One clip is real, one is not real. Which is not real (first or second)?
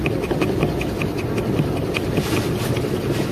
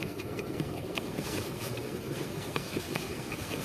second